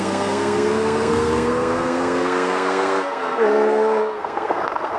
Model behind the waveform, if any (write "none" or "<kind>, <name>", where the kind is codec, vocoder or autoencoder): codec, SNAC